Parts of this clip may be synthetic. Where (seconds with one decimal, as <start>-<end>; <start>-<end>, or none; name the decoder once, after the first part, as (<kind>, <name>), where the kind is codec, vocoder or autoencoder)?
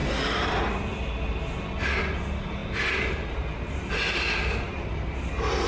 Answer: none